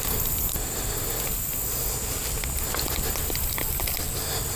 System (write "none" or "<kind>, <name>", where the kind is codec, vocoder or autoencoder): none